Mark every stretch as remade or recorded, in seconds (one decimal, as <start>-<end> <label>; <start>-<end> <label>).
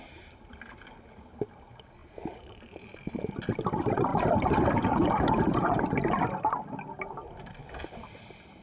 0.0-2.0 recorded; 2.0-3.3 remade; 3.3-4.1 recorded; 4.1-5.8 remade; 5.8-8.6 recorded